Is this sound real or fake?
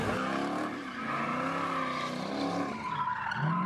real